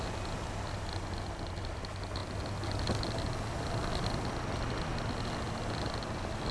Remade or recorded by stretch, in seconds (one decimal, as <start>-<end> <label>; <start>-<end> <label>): 0.0-6.5 recorded